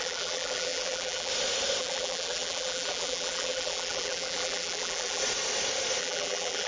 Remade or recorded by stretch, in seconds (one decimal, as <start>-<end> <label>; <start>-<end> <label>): 0.0-1.3 remade; 1.3-1.8 recorded; 1.8-5.2 remade; 5.2-6.0 recorded; 6.0-6.7 remade